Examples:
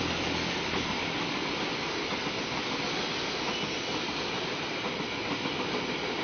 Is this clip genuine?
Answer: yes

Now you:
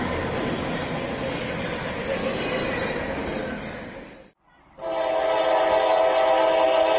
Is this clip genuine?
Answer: yes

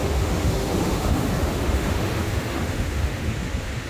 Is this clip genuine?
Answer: no